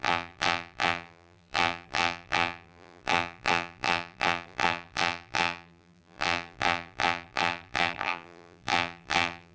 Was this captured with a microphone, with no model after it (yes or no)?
no